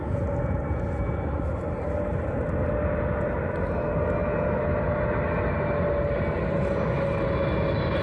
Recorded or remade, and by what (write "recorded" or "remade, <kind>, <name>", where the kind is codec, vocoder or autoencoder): recorded